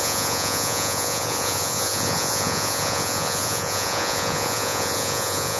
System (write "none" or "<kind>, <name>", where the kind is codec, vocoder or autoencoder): vocoder, Vocos